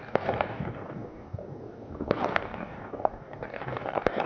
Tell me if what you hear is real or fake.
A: fake